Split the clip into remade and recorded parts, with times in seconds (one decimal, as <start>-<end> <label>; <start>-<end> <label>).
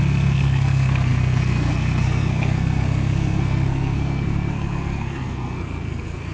0.0-6.3 remade